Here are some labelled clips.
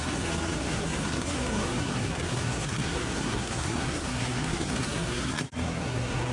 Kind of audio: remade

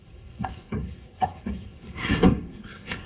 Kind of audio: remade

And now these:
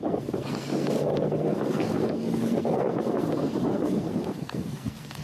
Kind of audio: remade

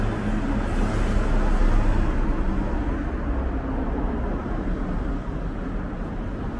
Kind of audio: recorded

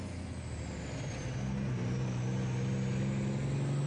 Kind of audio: recorded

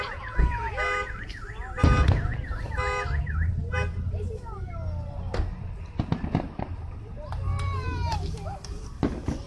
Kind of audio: recorded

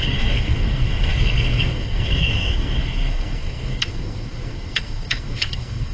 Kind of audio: remade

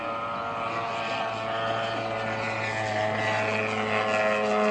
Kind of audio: recorded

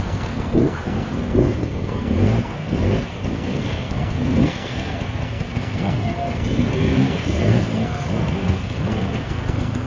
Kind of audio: remade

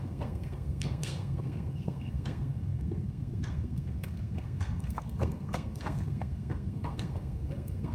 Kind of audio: remade